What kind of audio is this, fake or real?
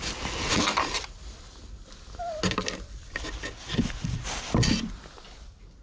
real